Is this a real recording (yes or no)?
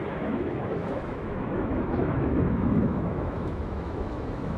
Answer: no